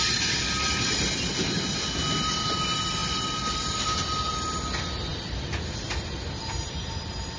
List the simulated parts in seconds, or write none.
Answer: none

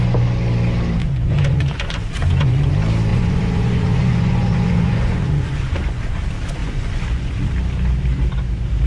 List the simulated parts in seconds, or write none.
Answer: 1.0-2.7; 3.1-6.0; 6.6-7.4